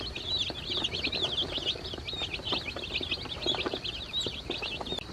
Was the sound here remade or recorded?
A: recorded